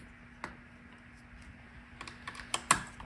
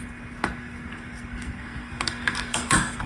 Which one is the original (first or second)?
first